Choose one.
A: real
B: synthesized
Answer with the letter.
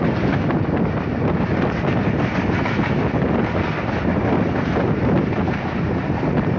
A